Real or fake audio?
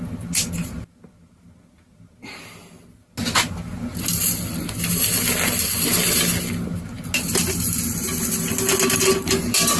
real